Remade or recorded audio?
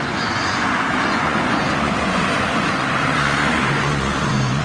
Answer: remade